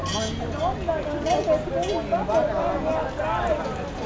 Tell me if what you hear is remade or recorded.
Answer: recorded